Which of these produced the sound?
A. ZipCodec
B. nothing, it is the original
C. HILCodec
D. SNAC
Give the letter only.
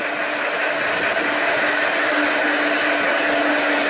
B